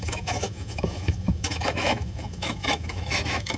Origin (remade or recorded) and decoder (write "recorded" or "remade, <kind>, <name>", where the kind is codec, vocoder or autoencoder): remade, autoencoder, DAC-VAE